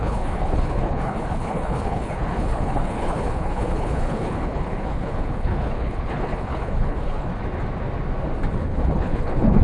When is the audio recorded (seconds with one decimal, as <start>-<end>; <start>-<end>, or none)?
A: 7.3-8.5